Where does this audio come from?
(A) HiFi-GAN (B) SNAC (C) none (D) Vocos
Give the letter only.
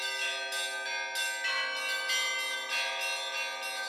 C